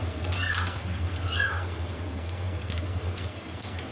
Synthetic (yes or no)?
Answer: yes